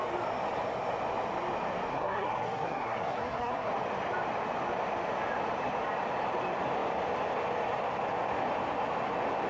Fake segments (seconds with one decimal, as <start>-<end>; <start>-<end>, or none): 1.9-3.7